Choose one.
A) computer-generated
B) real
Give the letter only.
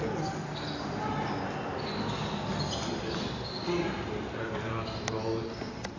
B